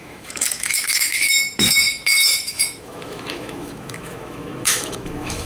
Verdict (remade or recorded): remade